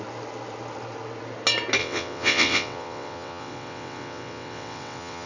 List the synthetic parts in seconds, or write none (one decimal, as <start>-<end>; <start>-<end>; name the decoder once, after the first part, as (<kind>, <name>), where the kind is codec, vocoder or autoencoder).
1.8-5.3 (vocoder, WaveNeXt)